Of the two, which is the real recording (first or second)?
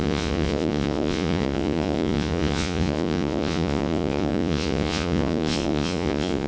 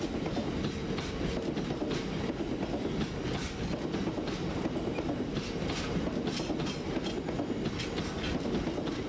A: second